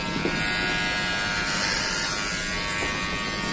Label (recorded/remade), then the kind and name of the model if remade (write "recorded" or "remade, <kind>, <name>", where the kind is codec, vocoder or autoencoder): recorded